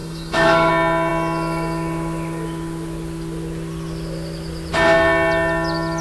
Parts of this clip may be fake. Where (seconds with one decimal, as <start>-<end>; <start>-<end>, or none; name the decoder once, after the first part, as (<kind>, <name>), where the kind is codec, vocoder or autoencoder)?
0.0-0.7 (autoencoder, DAC-VAE)